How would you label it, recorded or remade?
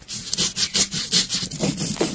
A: recorded